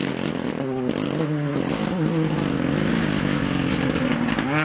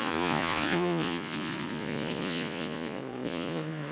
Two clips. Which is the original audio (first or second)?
first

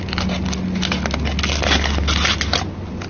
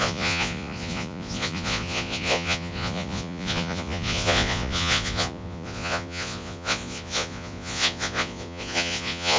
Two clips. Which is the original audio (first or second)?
first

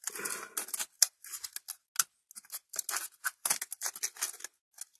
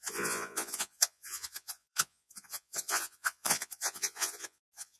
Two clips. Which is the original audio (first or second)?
first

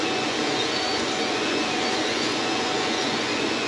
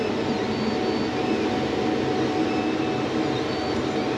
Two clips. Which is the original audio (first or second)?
second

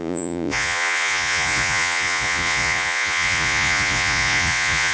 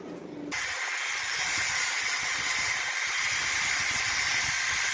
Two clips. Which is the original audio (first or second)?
second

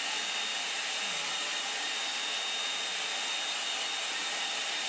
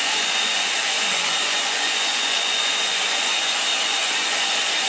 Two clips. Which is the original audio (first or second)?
first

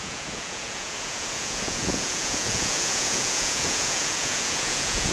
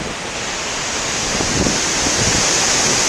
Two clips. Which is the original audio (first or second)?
second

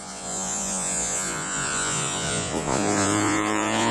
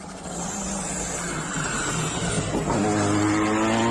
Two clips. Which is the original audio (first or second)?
second